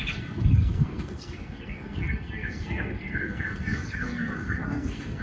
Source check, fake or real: fake